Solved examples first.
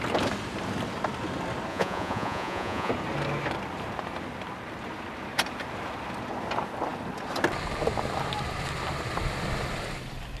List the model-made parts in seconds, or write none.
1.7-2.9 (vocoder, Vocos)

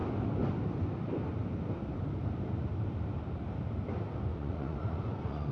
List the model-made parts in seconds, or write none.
4.3-5.5 (vocoder, Vocos)

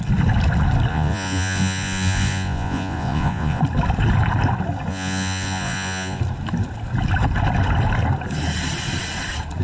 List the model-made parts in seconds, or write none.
0.9-3.6 (vocoder, Vocos); 4.9-6.2

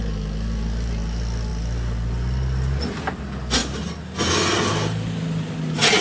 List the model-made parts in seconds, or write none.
none

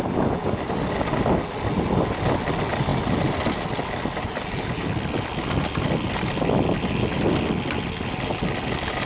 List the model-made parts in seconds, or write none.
none